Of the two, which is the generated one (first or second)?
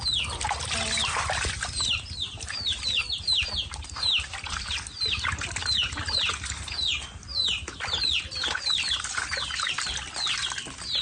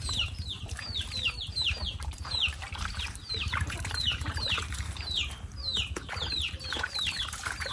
second